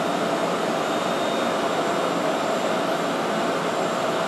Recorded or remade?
recorded